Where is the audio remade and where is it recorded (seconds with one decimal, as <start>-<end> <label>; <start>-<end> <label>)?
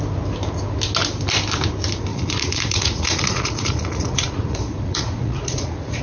0.0-2.1 recorded; 2.1-6.0 remade